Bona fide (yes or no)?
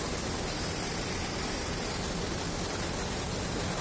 yes